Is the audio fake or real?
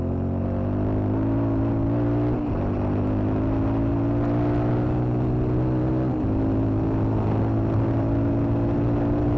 real